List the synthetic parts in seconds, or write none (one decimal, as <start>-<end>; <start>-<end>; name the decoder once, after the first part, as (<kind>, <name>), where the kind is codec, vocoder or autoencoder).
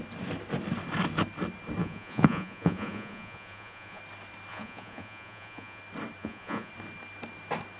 1.8-4.0 (vocoder, Vocos); 4.5-5.8; 6.2-6.7